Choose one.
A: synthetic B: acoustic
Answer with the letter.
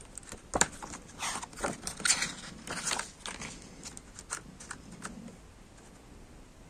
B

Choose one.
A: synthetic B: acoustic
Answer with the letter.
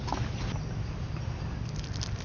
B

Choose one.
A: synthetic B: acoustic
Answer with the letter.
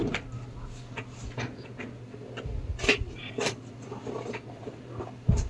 B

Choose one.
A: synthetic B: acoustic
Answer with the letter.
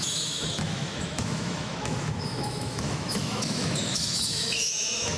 A